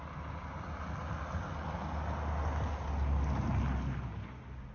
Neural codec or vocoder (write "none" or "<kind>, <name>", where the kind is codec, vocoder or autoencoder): none